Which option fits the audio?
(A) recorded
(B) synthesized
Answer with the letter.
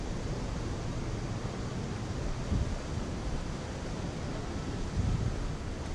A